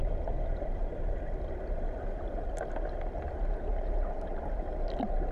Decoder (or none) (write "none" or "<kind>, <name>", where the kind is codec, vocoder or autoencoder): none